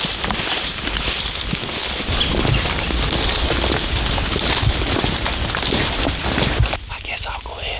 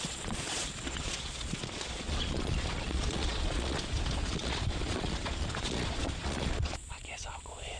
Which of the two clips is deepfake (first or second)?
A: second